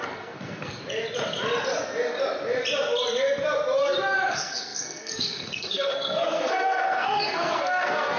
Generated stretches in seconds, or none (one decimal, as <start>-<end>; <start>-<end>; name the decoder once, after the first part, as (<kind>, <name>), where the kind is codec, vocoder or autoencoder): 0.0-0.8 (codec, SNAC); 4.3-8.2